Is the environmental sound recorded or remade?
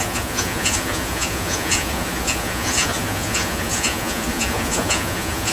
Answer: remade